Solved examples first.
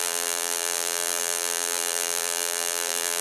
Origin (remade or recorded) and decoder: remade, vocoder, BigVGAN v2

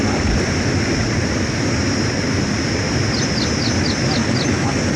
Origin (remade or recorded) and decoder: recorded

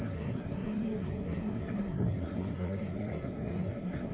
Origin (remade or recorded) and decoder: remade, codec, SNAC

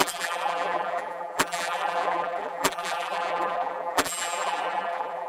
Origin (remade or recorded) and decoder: remade, vocoder, BigVGAN v2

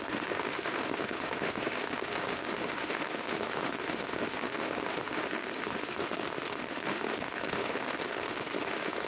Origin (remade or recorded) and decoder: remade, autoencoder, DAC-VAE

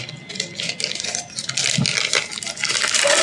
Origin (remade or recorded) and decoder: recorded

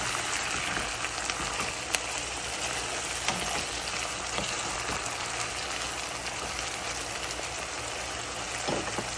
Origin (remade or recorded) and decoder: recorded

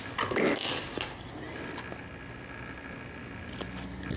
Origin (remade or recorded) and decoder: recorded